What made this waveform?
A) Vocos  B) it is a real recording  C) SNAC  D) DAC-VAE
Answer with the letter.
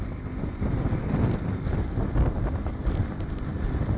B